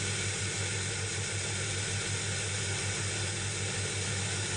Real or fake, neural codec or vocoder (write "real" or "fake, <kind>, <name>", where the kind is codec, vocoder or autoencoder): real